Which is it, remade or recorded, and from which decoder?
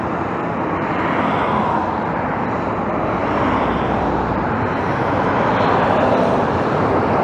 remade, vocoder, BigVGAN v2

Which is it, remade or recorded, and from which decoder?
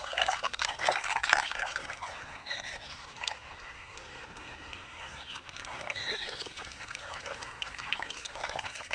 remade, codec, SNAC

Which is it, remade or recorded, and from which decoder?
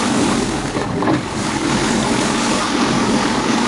remade, codec, DAC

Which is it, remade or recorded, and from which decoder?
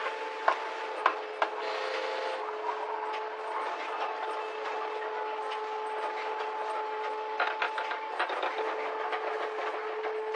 recorded